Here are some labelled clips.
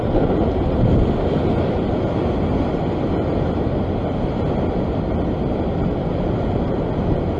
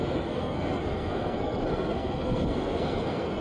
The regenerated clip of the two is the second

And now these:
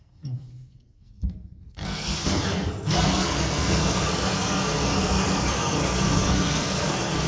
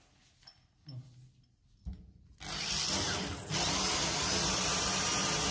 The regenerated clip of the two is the first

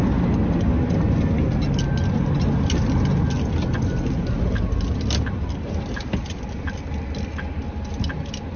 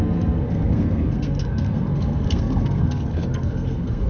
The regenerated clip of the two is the second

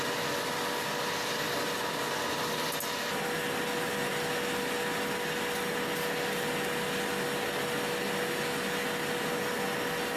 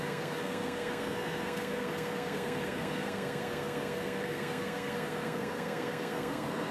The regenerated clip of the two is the second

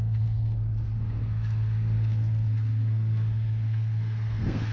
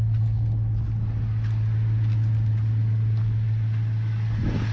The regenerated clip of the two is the first